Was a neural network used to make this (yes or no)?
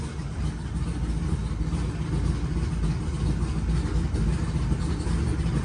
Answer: no